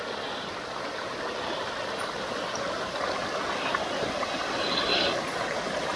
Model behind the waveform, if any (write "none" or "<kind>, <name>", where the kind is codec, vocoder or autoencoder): none